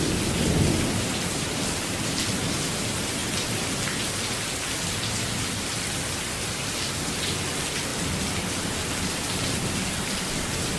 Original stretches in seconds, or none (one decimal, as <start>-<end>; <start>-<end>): 0.0-10.8